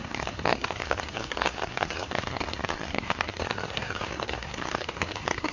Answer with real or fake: fake